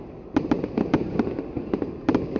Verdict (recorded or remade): recorded